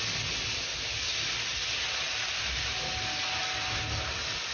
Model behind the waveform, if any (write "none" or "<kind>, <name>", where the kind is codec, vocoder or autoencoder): none